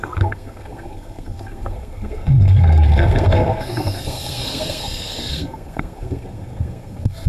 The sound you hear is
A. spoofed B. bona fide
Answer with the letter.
A